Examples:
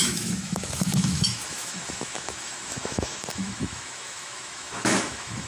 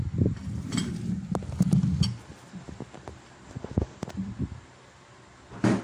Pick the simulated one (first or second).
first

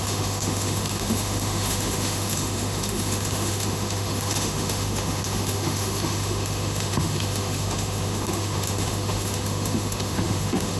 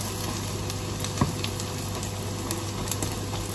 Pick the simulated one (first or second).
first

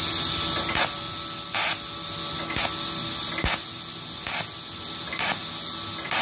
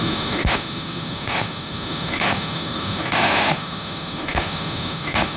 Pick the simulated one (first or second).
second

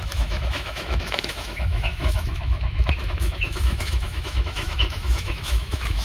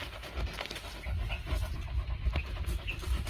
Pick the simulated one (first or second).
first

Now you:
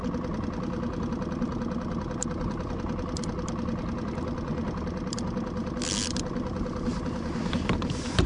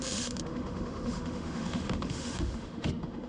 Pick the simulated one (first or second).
second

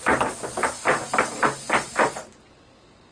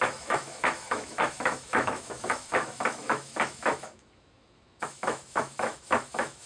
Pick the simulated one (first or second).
second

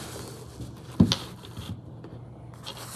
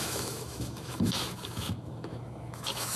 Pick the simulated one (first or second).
second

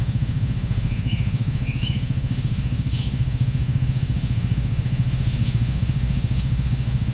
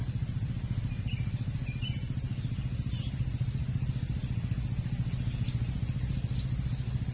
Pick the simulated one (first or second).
first